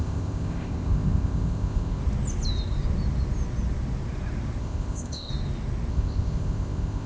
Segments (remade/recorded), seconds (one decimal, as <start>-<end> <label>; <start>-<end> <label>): 0.0-2.0 remade; 2.0-4.6 recorded; 4.6-5.3 remade; 5.3-5.9 recorded; 5.9-7.1 remade